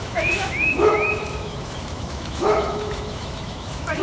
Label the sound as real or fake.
fake